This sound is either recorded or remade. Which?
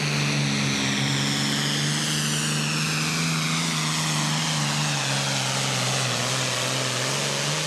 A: recorded